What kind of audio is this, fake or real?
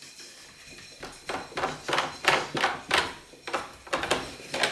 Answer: fake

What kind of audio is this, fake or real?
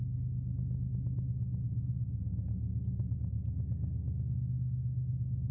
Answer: real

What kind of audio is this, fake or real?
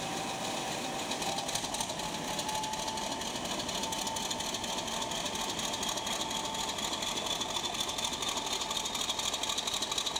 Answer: real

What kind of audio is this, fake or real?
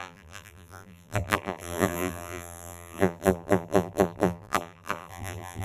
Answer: fake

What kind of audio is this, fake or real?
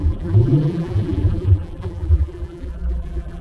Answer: fake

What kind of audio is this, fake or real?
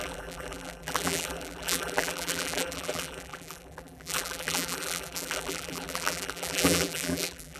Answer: fake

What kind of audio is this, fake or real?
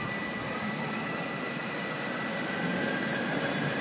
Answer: real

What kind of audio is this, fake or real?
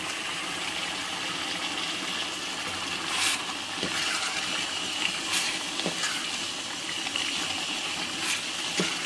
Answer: real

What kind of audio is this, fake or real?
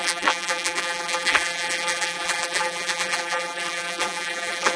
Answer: fake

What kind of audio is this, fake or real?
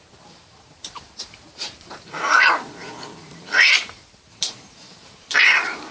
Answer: fake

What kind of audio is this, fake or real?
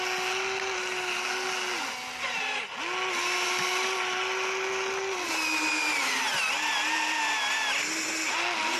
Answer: real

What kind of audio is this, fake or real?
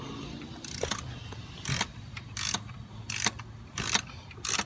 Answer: real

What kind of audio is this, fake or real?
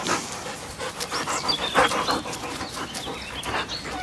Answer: real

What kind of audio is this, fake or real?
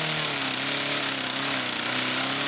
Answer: real